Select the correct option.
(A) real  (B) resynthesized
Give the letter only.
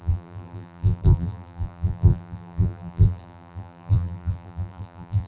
B